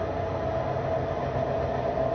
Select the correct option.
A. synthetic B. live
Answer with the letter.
B